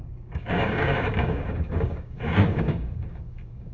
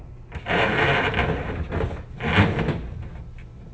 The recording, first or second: second